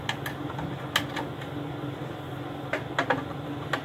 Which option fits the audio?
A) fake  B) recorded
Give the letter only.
B